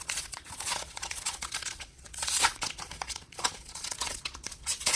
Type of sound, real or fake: fake